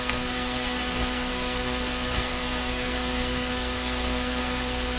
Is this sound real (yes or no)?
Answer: no